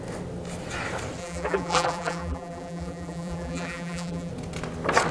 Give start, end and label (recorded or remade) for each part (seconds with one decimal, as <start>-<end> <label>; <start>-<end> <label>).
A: 0.0-1.2 recorded; 1.2-4.3 remade; 4.3-5.1 recorded